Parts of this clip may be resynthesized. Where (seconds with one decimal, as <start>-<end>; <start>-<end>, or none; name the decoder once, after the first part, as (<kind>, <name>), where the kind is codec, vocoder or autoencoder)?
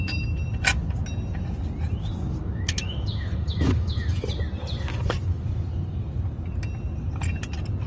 2.4-4.2 (autoencoder, DAC-VAE)